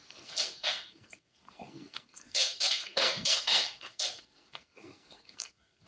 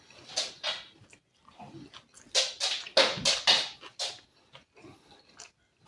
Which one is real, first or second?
second